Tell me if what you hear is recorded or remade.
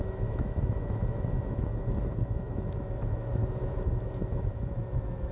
remade